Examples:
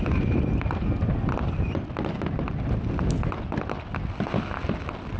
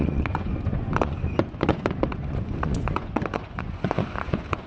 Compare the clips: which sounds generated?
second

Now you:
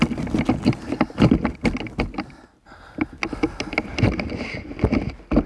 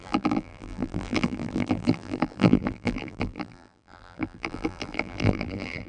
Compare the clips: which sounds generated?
second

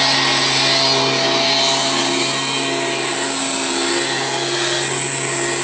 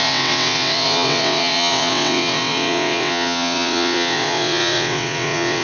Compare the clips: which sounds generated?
second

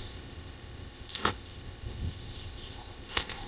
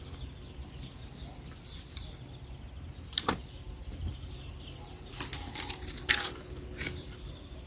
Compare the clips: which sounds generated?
first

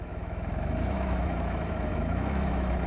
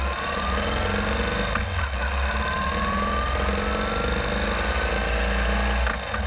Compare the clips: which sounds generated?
first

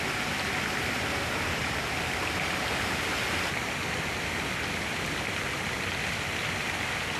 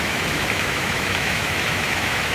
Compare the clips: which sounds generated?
second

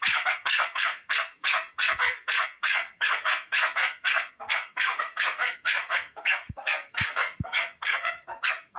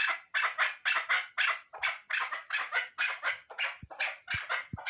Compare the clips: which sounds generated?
first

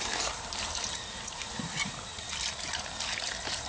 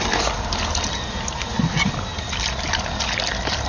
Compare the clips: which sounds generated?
first